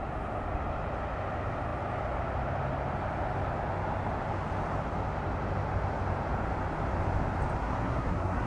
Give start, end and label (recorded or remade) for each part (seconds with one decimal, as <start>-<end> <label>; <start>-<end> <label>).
0.0-7.6 recorded; 7.6-8.5 remade